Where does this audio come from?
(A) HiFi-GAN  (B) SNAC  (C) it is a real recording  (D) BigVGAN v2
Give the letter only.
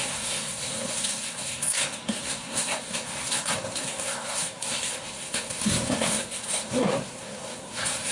B